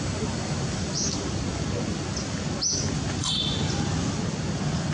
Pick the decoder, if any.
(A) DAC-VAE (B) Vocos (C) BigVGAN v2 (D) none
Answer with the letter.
D